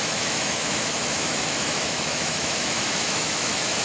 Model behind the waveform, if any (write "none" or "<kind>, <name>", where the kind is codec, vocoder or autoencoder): autoencoder, DAC-VAE